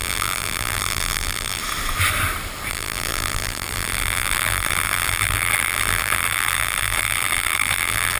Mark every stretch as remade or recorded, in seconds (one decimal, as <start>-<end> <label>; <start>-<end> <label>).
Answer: 0.0-1.6 remade; 1.6-2.7 recorded; 2.7-8.2 remade